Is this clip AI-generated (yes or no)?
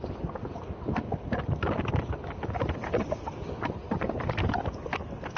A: no